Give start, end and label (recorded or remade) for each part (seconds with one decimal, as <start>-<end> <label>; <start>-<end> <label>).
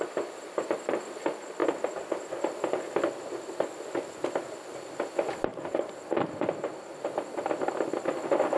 0.0-5.5 recorded; 5.5-6.0 remade; 6.0-8.6 recorded